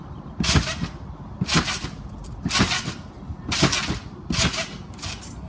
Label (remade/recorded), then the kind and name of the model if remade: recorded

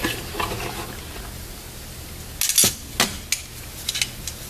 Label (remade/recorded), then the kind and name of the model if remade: recorded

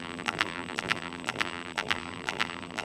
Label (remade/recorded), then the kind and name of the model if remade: remade, vocoder, BigVGAN v2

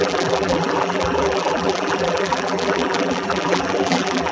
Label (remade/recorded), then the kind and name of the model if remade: remade, vocoder, BigVGAN v2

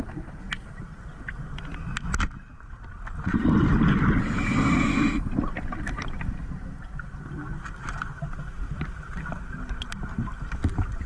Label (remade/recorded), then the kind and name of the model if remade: recorded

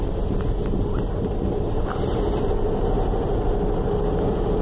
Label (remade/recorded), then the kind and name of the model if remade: recorded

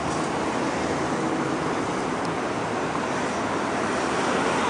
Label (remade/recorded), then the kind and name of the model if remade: recorded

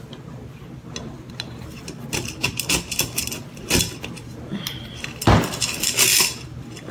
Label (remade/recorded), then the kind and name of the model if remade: recorded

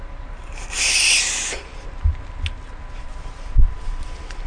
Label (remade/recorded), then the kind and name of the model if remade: recorded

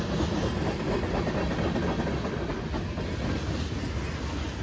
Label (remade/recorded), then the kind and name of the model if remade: recorded